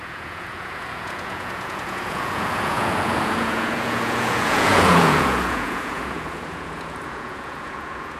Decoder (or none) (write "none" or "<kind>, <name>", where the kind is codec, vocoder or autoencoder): vocoder, Vocos